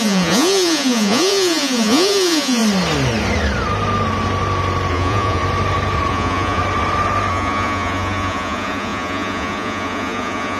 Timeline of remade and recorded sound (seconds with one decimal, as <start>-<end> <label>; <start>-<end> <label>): 0.0-2.6 remade; 2.6-4.9 recorded; 4.9-5.4 remade; 5.4-6.1 recorded; 6.1-6.6 remade; 6.6-7.3 recorded; 7.3-10.6 remade